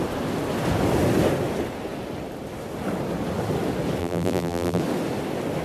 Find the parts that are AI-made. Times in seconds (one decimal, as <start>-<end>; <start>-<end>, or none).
4.0-4.8